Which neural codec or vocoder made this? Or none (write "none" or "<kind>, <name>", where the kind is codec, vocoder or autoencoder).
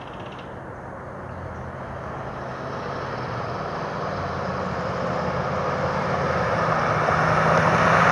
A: none